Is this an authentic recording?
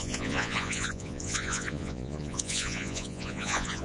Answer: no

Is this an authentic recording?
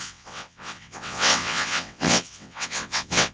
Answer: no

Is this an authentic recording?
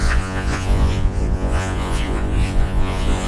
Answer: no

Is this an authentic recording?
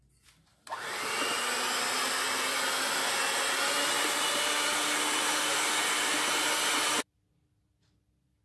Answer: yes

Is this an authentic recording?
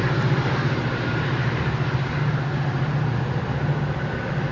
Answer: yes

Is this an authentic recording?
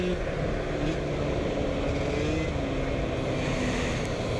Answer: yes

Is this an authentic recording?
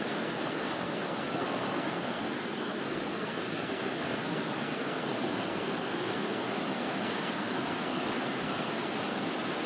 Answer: no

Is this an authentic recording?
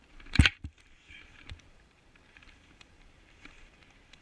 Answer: no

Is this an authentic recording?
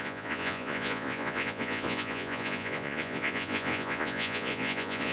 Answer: no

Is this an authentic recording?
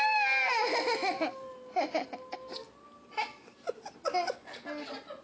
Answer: yes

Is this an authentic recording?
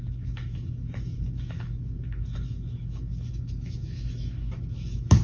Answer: no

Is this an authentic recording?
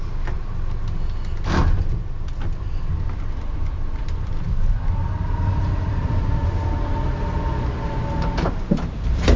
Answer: yes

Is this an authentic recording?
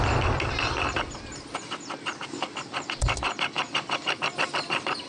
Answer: yes